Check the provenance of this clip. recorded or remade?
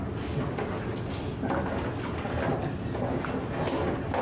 recorded